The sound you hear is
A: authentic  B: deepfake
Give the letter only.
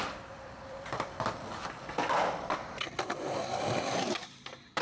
B